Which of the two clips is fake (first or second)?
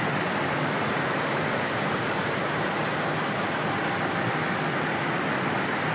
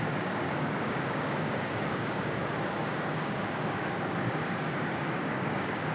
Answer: second